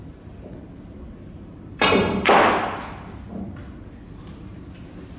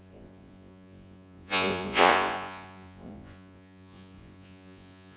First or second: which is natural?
first